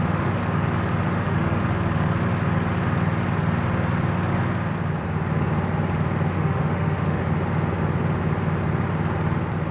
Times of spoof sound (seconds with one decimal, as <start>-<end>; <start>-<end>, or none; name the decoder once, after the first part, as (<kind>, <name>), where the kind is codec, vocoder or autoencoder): 0.0-0.4 (autoencoder, DAC-VAE); 1.0-1.6; 6.3-7.2